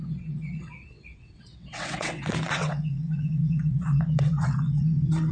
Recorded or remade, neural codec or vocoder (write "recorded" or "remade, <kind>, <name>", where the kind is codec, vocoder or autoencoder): remade, vocoder, WaveNeXt